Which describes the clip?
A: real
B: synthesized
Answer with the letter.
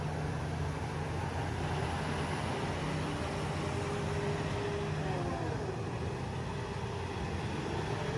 A